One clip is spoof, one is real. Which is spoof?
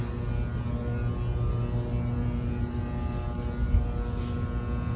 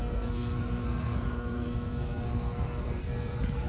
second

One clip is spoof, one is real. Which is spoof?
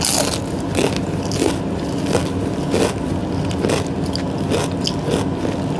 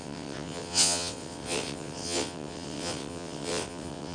second